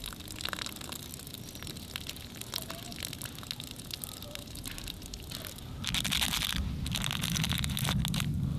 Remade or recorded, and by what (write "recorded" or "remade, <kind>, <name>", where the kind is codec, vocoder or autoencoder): recorded